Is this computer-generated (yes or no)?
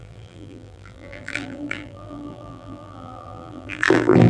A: yes